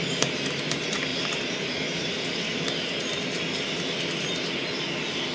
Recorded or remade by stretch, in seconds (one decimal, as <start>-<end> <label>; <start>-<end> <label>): 0.0-1.1 recorded; 1.1-4.3 remade; 4.3-5.3 recorded